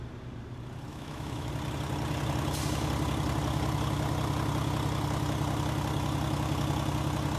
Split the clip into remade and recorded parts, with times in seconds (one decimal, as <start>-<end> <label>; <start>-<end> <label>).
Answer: 0.0-0.9 recorded; 0.9-1.5 remade; 1.5-7.4 recorded